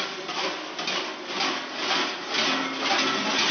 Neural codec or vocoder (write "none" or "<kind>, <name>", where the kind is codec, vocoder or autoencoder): none